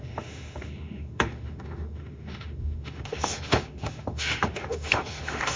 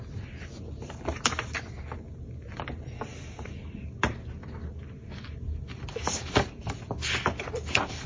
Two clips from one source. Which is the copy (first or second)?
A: first